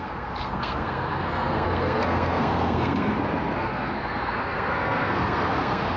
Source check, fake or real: fake